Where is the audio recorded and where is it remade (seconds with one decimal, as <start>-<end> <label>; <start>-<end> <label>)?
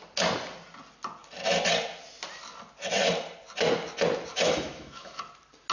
0.0-4.3 recorded; 4.3-5.2 remade; 5.2-5.7 recorded